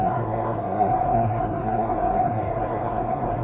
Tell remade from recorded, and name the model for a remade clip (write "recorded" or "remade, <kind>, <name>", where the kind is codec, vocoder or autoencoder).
remade, codec, SNAC